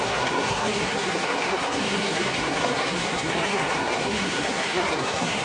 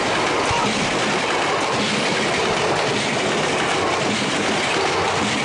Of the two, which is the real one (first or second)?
second